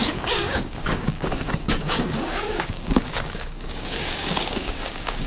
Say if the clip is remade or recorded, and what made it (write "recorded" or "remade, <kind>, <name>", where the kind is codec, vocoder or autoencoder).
remade, codec, DAC